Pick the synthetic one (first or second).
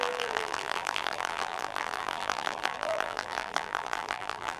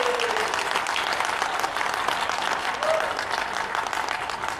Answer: first